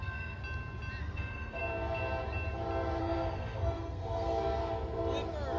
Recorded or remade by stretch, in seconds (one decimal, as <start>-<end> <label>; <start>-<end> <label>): 0.0-0.4 remade; 0.4-1.0 recorded; 1.0-1.6 remade; 1.6-3.0 recorded; 3.0-4.6 remade; 4.6-5.6 recorded